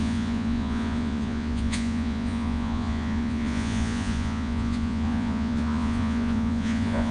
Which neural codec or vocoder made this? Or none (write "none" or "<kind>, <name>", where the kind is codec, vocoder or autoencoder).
vocoder, Vocos